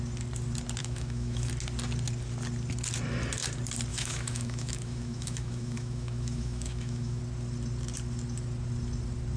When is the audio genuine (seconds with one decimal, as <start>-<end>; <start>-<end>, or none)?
0.0-0.8; 1.5-3.9; 7.2-9.4